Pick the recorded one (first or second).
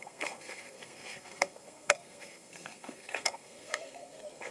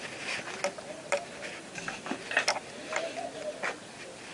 second